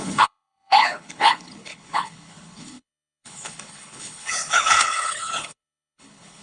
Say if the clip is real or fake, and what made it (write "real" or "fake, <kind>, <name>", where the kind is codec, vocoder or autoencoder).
fake, codec, HILCodec